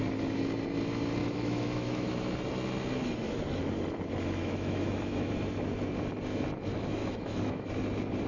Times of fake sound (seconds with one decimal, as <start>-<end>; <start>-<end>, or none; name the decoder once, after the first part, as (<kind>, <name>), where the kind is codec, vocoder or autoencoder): 1.2-2.1 (autoencoder, DAC-VAE); 4.4-5.3; 7.0-7.7